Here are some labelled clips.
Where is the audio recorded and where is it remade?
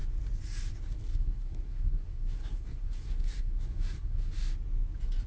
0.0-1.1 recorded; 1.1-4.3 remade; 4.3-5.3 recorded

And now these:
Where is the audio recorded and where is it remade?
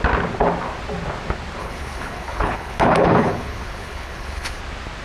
0.0-1.6 recorded; 1.6-4.6 remade; 4.6-5.0 recorded